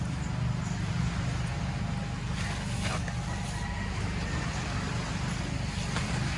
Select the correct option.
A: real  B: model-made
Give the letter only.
A